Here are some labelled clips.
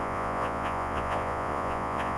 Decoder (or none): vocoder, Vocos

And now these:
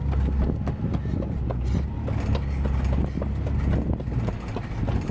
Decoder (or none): none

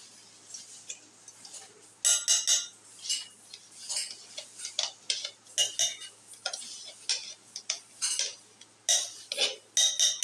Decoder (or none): none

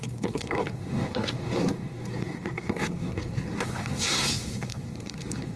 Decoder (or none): codec, SNAC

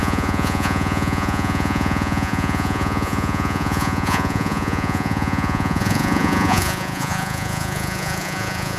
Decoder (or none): vocoder, Vocos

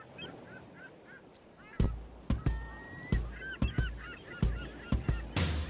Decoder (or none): none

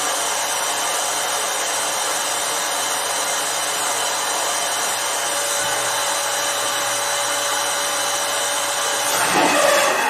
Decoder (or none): none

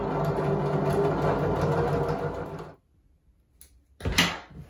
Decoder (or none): none